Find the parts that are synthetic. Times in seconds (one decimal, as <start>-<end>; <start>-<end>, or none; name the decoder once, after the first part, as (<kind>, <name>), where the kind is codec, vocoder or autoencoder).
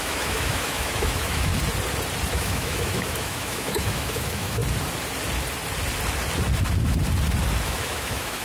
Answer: 0.0-1.5 (autoencoder, DAC-VAE); 2.3-4.6; 7.6-8.4